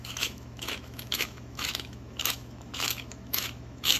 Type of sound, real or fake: fake